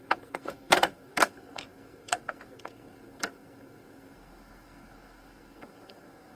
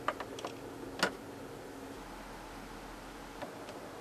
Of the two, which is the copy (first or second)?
first